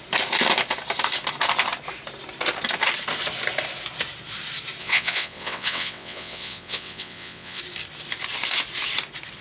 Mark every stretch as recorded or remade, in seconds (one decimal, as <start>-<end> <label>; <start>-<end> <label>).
0.0-4.8 recorded; 4.8-7.6 remade; 7.6-9.4 recorded